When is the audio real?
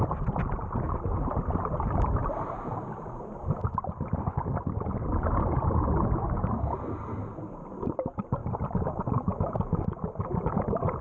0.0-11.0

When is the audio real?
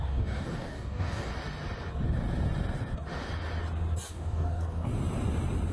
1.3-4.1; 4.9-5.7